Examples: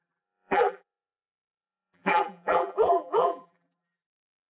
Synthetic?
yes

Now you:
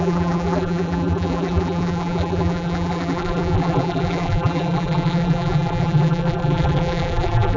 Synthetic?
yes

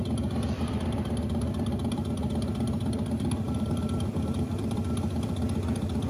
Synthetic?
yes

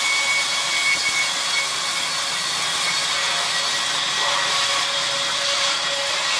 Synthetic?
no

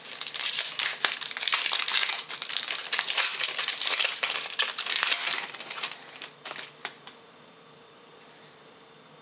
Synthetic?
yes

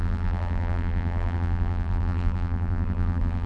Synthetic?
yes